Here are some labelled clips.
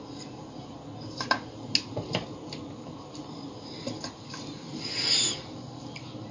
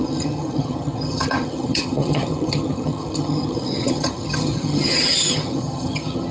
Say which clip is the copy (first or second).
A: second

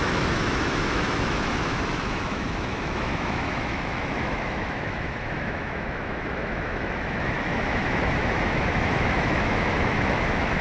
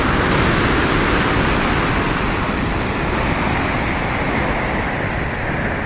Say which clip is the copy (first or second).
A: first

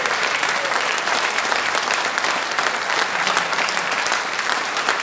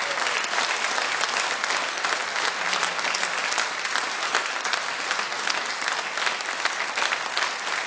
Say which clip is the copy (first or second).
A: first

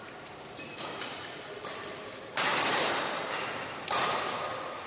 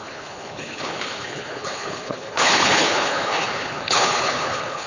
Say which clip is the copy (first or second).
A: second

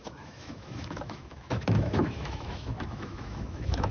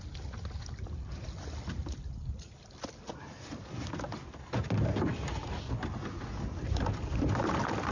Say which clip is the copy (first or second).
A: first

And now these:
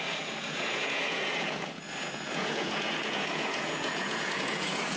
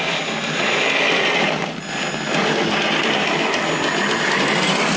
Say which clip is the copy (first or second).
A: first